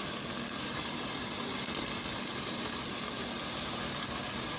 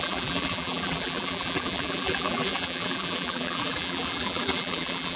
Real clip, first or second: first